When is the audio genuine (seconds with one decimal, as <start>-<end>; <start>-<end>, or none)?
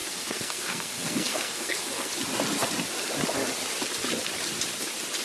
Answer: 2.1-5.2